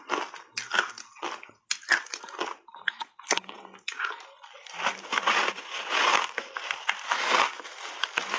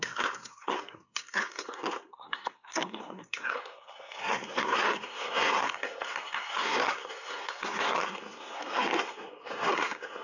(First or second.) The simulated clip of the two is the second